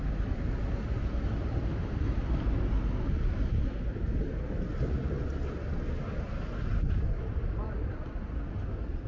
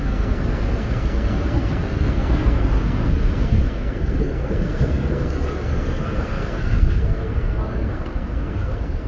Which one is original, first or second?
first